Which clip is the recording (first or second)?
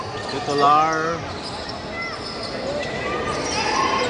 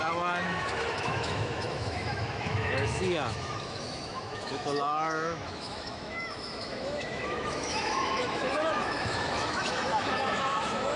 first